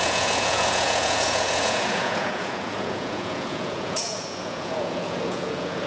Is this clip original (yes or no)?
no